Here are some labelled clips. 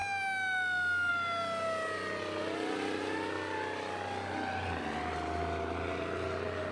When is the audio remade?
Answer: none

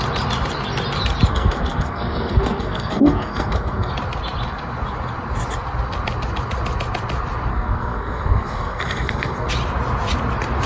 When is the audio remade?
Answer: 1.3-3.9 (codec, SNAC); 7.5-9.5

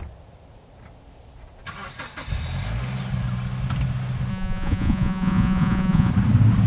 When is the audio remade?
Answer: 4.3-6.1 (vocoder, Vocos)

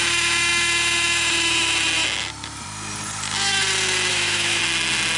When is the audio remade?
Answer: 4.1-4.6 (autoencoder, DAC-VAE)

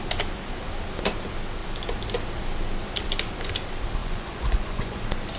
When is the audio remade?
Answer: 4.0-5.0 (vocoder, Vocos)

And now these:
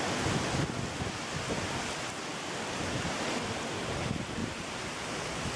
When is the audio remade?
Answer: 4.4-5.6 (vocoder, BigVGAN v2)